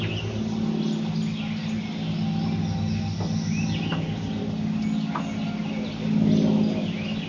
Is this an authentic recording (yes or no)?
yes